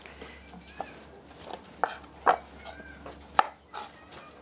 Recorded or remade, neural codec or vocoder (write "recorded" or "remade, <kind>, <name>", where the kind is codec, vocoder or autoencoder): recorded